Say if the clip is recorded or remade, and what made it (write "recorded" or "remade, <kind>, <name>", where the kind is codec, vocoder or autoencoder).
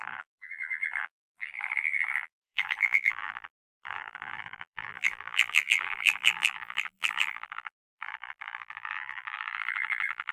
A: remade, vocoder, BigVGAN v2